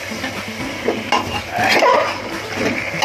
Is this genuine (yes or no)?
yes